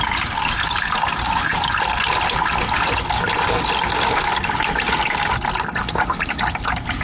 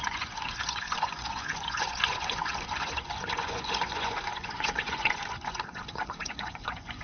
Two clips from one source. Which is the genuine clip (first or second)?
first